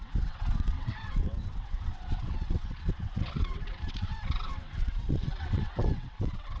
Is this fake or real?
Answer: fake